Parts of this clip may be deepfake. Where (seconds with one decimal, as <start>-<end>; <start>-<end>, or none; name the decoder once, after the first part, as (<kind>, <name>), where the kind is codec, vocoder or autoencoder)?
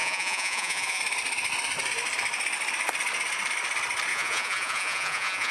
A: 0.0-1.0 (vocoder, Vocos); 4.1-5.5